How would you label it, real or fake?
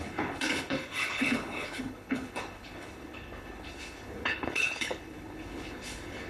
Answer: fake